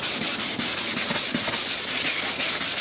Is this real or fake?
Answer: real